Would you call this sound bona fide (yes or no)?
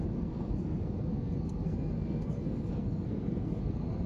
no